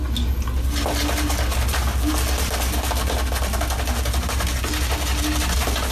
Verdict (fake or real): real